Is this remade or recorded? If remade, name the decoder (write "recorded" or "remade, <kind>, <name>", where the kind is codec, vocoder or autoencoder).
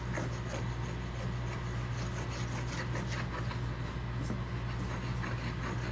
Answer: recorded